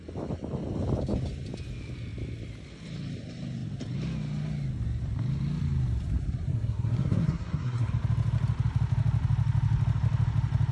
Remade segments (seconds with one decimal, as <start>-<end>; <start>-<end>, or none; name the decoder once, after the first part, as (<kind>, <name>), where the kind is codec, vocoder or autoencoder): 6.5-7.9 (codec, SNAC)